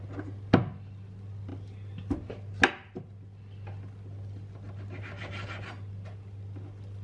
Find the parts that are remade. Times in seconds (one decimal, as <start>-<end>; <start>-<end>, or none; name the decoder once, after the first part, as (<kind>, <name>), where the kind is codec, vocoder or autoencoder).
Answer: none